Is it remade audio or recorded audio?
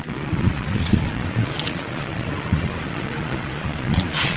remade